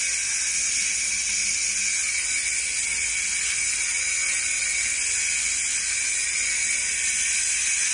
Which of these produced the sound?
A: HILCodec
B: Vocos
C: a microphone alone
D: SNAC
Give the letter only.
C